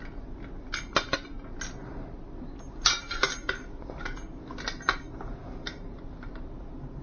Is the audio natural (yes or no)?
yes